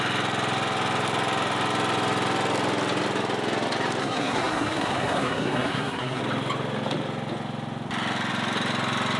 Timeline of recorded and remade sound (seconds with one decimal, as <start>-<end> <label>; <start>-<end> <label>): 0.0-4.0 recorded; 4.0-6.2 remade; 6.2-9.2 recorded